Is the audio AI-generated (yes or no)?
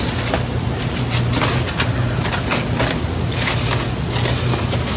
no